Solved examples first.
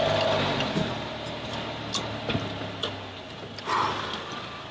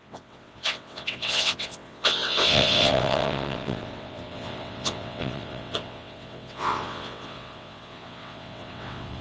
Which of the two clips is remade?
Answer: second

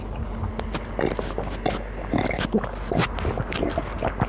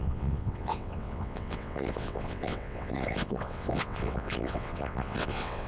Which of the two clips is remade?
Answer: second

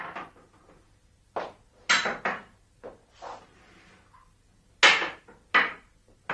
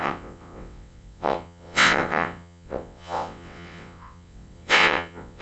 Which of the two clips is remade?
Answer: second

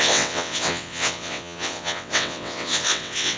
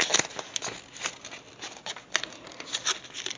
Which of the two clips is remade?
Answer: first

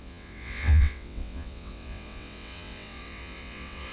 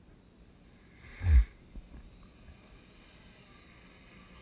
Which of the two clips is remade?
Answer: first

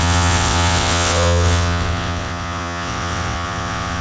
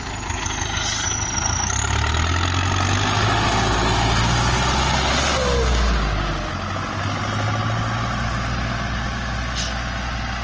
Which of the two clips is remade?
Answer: first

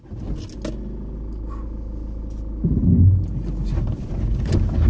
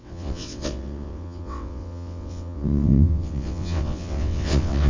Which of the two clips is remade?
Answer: second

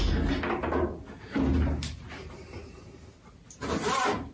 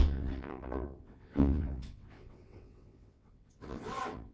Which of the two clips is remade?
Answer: second